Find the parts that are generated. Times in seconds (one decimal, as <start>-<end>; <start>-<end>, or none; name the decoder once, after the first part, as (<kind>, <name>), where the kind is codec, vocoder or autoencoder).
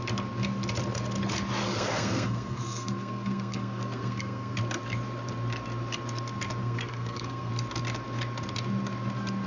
1.6-4.6 (codec, SNAC); 6.6-7.5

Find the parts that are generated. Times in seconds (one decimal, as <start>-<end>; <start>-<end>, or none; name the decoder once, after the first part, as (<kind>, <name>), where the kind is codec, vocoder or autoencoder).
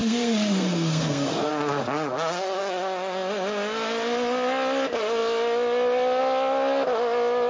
0.0-1.5 (codec, SNAC)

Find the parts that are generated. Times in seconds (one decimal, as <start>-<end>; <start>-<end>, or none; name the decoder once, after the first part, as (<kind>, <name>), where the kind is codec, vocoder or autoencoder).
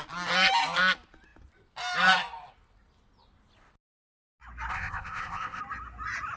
4.7-5.6 (codec, ZipCodec)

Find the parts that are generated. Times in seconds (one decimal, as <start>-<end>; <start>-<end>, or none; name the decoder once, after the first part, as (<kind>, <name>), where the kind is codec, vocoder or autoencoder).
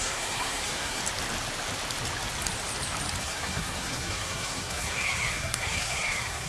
0.0-1.0 (codec, SNAC); 3.2-6.5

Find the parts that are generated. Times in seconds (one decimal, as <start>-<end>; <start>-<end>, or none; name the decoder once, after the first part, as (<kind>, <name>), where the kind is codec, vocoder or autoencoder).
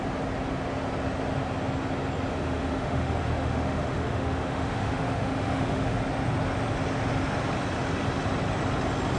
2.3-6.0 (autoencoder, DAC-VAE)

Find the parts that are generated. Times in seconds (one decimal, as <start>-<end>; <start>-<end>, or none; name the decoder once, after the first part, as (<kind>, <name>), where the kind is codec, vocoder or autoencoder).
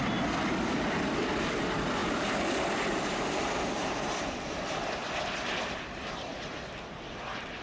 0.0-6.3 (vocoder, BigVGAN v2); 7.1-7.6